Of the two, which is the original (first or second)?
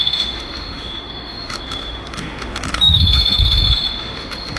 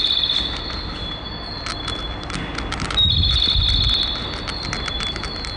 second